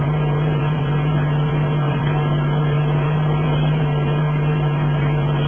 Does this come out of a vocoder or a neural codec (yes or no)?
yes